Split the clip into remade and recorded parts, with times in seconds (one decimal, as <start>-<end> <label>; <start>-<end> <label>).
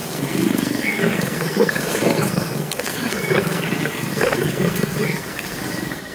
0.0-6.1 remade